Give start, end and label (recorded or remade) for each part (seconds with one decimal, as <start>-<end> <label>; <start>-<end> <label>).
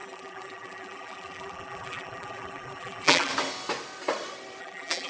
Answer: 0.0-3.3 remade; 3.3-4.6 recorded; 4.6-5.1 remade